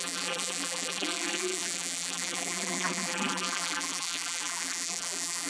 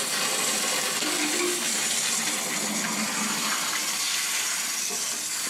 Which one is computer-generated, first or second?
first